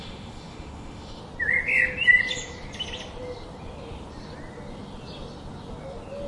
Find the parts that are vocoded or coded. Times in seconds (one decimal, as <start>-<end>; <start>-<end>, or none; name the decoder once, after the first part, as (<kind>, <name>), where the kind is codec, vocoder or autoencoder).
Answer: 0.0-1.2 (autoencoder, DAC-VAE)